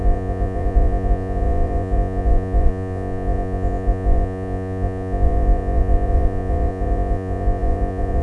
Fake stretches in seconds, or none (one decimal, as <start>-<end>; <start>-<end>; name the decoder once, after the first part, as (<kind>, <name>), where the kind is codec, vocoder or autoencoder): 0.0-8.2 (vocoder, Vocos)